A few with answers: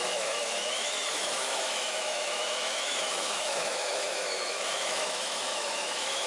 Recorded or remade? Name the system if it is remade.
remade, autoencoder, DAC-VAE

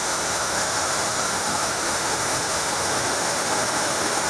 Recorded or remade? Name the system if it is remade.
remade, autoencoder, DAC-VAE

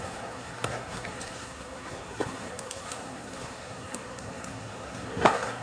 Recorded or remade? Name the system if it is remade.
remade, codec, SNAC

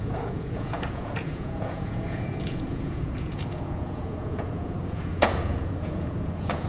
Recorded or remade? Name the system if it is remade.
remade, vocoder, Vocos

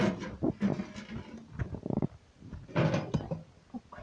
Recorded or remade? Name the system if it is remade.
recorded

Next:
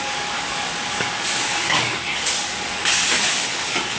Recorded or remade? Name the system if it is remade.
remade, codec, DAC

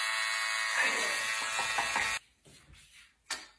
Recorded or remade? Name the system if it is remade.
recorded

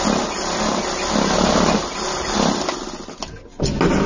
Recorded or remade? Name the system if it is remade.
recorded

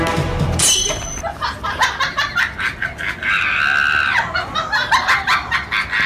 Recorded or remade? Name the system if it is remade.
recorded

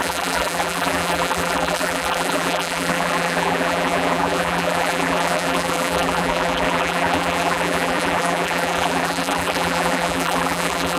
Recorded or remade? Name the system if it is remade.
remade, vocoder, BigVGAN v2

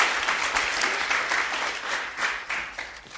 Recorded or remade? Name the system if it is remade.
recorded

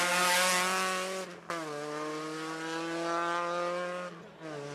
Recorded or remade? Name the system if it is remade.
recorded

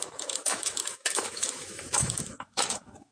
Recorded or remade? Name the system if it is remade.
remade, autoencoder, DAC-VAE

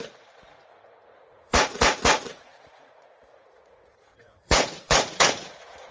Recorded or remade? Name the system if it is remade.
remade, vocoder, Vocos